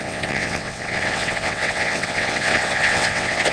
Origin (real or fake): fake